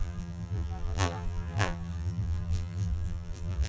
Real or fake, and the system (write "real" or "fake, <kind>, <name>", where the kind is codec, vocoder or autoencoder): fake, vocoder, BigVGAN v2